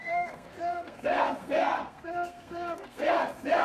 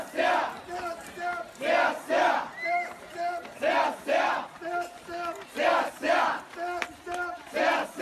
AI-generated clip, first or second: first